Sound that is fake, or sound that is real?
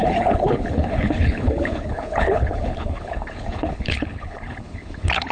fake